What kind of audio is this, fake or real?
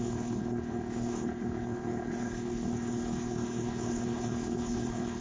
fake